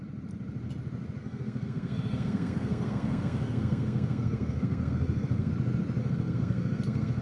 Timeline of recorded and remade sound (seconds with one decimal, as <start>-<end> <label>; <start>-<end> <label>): 0.0-1.2 recorded; 1.2-5.5 remade; 5.5-6.0 recorded; 6.0-7.2 remade